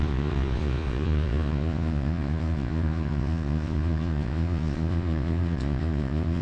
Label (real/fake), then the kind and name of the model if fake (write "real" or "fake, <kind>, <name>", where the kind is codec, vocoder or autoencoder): fake, vocoder, Vocos